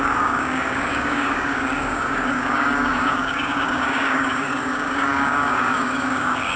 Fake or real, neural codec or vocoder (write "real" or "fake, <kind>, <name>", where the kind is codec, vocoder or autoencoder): fake, codec, DAC